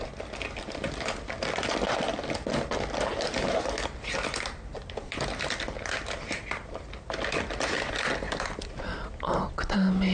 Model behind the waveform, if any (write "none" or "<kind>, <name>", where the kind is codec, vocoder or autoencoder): none